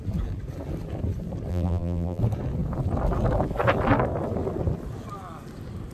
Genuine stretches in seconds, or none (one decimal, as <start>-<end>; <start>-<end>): 0.0-1.5; 2.2-5.9